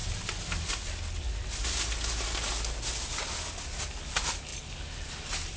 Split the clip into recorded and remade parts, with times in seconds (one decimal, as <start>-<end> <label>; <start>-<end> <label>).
0.0-5.6 recorded